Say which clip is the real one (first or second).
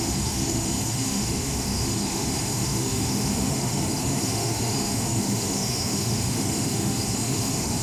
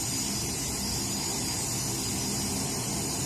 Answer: second